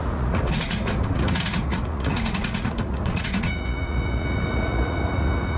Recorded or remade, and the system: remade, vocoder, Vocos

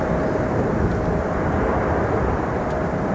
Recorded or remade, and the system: recorded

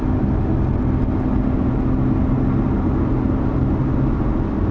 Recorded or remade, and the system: recorded